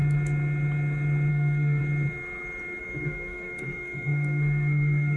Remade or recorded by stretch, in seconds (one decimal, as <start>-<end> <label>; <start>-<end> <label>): 0.0-1.3 recorded; 1.3-1.8 remade; 1.8-2.8 recorded; 2.8-5.2 remade